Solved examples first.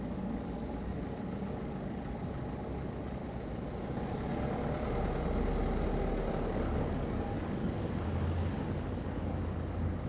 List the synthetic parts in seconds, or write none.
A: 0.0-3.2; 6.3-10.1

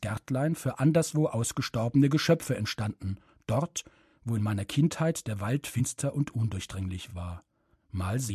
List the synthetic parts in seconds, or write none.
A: none

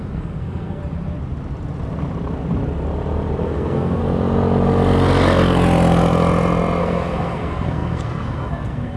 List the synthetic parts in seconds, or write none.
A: 0.0-0.8; 3.4-4.0; 6.8-9.0

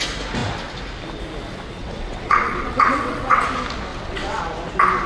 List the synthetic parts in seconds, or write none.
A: 1.8-3.4; 3.9-4.4